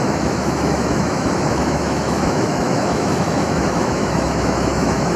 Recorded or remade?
remade